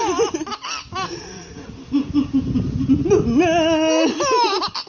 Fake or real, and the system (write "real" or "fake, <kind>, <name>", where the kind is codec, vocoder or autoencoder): real